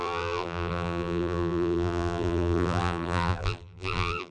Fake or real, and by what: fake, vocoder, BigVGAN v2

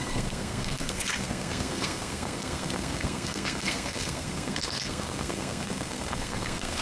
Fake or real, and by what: fake, codec, SNAC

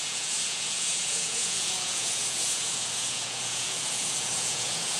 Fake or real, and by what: fake, vocoder, Vocos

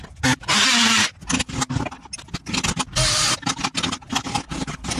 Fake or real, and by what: real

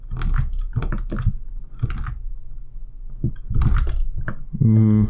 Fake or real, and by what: real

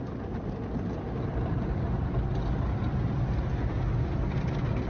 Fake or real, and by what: real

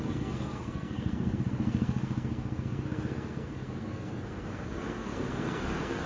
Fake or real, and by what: fake, codec, SNAC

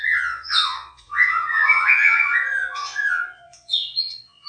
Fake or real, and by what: fake, vocoder, Vocos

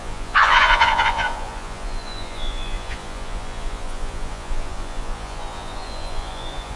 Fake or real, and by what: fake, vocoder, Vocos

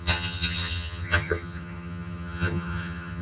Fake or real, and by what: fake, vocoder, HiFi-GAN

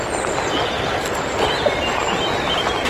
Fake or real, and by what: real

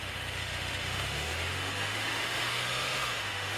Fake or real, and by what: fake, autoencoder, DAC-VAE